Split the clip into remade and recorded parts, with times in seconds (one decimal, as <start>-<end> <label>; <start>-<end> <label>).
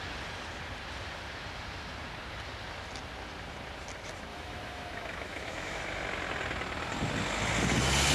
0.0-4.3 recorded; 4.3-5.8 remade; 5.8-8.1 recorded